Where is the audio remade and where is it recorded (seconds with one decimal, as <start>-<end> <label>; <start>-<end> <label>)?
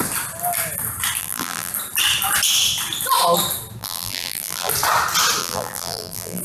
0.0-1.2 recorded; 1.2-1.7 remade; 1.7-3.8 recorded; 3.8-4.7 remade; 4.7-5.4 recorded; 5.4-6.4 remade